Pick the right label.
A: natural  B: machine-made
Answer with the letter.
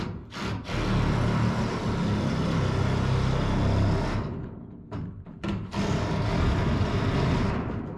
A